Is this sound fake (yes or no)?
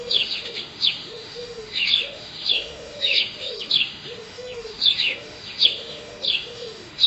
yes